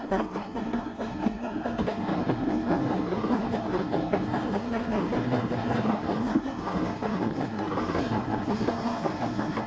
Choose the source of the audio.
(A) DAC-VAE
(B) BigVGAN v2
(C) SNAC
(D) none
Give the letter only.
C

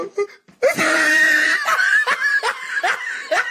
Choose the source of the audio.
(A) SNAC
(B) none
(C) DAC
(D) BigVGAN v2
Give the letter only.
D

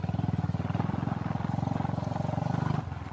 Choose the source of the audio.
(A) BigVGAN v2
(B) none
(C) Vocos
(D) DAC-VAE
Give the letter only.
B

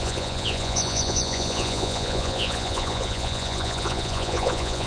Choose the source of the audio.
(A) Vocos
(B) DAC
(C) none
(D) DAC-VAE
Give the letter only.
A